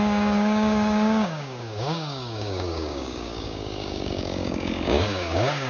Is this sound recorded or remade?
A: remade